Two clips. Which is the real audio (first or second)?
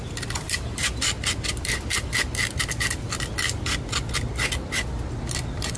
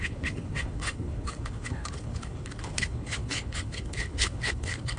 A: first